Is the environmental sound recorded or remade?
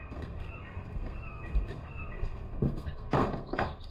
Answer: remade